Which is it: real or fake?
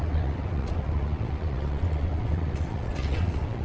fake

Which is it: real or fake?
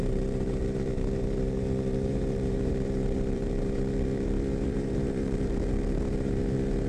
fake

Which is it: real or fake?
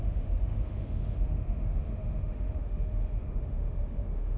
fake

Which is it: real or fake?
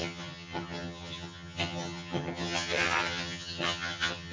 fake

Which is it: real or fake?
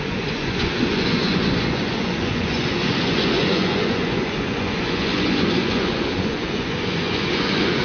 fake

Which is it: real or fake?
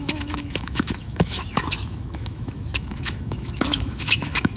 fake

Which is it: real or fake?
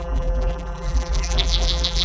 fake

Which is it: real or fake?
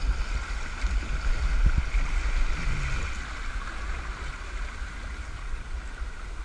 real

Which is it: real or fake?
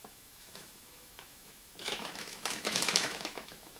fake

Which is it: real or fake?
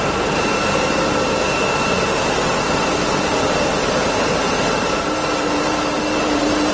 fake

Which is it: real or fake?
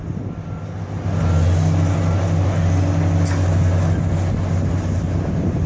real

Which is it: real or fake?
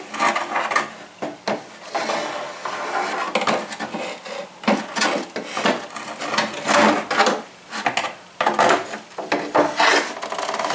real